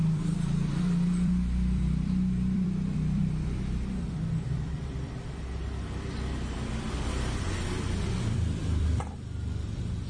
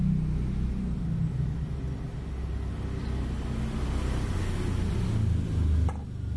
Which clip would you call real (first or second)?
second